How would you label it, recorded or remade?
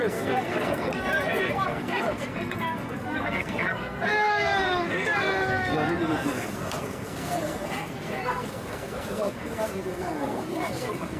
remade